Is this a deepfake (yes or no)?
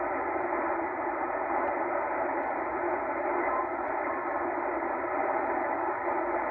no